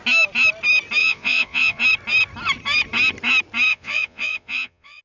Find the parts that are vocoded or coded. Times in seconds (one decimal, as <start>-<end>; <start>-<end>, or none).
1.0-1.8; 3.7-5.0